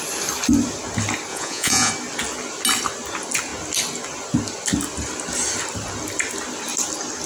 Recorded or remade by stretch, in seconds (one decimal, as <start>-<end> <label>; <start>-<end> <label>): 0.0-1.3 recorded; 1.3-1.9 remade; 1.9-7.3 recorded